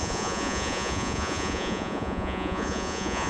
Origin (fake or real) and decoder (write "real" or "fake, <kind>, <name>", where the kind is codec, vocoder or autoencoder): fake, vocoder, Vocos